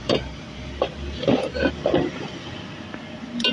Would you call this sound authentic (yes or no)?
yes